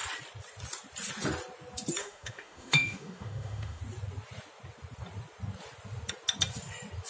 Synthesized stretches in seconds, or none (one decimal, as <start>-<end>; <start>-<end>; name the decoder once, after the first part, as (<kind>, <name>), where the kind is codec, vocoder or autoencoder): 2.0-3.8 (autoencoder, DAC-VAE)